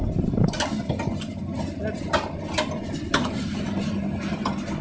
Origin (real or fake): real